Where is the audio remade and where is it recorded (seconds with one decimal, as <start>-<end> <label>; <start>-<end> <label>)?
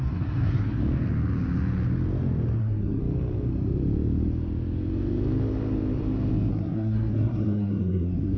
0.0-0.8 remade; 0.8-2.6 recorded; 2.6-3.0 remade; 3.0-6.5 recorded; 6.5-8.4 remade